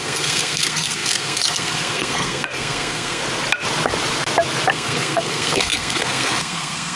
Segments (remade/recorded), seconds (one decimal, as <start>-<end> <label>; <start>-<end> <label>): 0.0-3.2 remade; 3.2-4.7 recorded; 4.7-7.0 remade